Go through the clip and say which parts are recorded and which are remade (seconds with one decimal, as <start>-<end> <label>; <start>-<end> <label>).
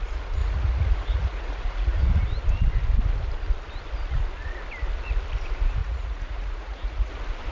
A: 0.0-0.4 recorded; 0.4-2.2 remade; 2.2-5.8 recorded; 5.8-7.1 remade; 7.1-7.5 recorded